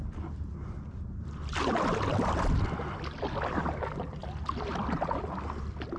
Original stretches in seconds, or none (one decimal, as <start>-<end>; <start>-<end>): 0.0-6.0